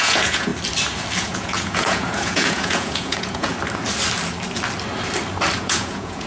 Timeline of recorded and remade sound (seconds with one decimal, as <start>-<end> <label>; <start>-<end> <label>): 0.0-0.5 remade; 0.5-1.2 recorded; 1.2-3.5 remade; 3.5-5.6 recorded; 5.6-6.3 remade